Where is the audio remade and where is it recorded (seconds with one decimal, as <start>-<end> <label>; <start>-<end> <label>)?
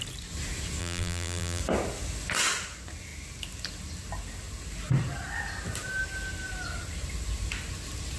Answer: 0.0-0.8 recorded; 0.8-1.6 remade; 1.6-8.2 recorded